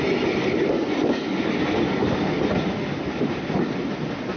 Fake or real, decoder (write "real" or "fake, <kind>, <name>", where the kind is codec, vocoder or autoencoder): real